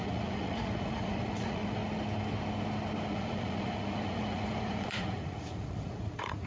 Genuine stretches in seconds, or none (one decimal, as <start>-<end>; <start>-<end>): 1.8-3.1